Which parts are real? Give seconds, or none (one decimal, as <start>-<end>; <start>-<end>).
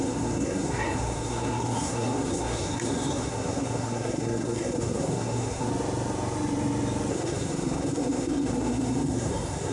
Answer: 5.7-7.1